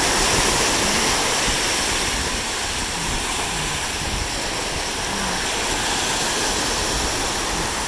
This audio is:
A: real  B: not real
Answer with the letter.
A